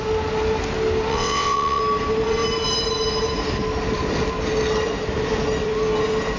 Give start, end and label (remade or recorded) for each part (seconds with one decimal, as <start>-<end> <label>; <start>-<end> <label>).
0.0-1.1 recorded; 1.1-1.8 remade; 1.8-6.4 recorded